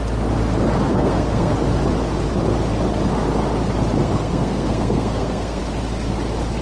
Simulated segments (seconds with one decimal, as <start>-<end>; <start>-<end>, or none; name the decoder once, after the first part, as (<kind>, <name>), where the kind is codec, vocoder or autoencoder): 0.9-1.5 (codec, SNAC); 4.0-5.6